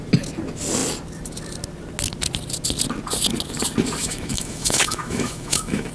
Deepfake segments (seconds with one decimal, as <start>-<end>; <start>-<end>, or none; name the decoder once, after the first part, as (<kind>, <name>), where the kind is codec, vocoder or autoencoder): 4.0-5.9 (autoencoder, DAC-VAE)